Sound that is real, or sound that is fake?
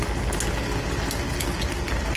real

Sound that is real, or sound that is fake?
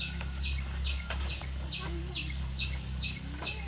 fake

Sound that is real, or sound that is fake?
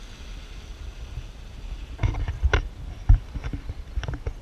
real